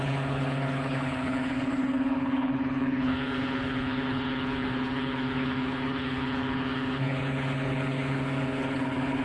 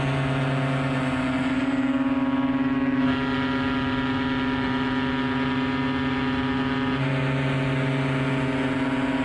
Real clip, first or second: second